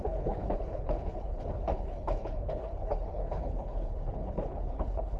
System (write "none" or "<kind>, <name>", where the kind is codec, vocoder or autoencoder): codec, HILCodec